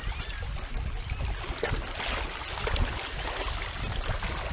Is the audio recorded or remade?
recorded